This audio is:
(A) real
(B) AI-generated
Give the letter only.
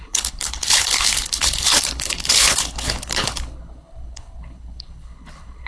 B